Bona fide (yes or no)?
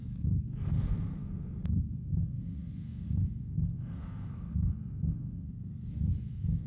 no